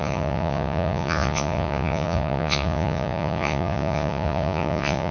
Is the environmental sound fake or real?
fake